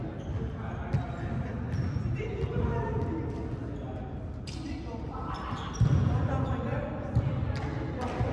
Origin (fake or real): real